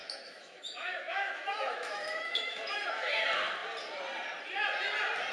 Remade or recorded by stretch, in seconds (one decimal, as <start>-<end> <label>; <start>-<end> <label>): 0.0-3.2 remade; 3.2-5.3 recorded